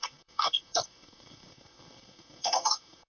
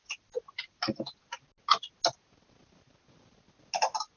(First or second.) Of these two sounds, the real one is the second